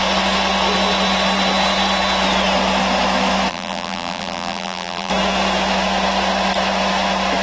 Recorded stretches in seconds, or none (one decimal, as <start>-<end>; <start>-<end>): 0.0-3.5; 5.1-7.4